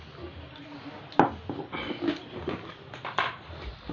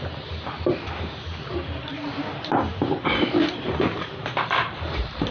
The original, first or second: first